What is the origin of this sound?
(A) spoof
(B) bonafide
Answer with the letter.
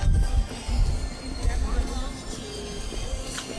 B